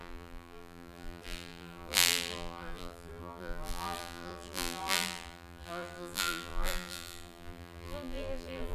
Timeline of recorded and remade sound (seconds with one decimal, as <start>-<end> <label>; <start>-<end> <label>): 0.0-8.7 remade